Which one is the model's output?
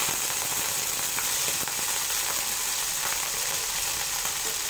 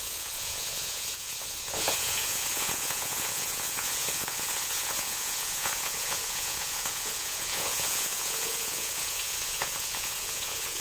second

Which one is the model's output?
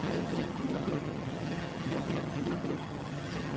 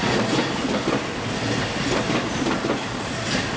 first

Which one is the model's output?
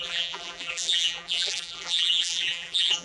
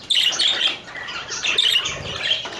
first